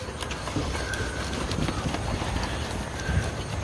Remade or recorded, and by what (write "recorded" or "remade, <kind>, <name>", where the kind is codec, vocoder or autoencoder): recorded